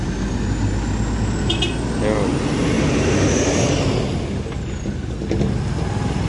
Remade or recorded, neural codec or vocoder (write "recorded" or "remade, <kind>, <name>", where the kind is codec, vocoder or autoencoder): recorded